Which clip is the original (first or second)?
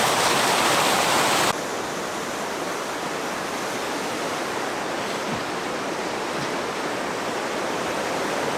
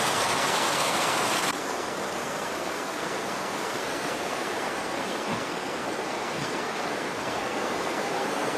first